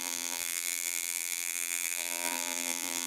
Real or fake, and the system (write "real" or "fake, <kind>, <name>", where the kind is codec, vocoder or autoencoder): fake, vocoder, BigVGAN v2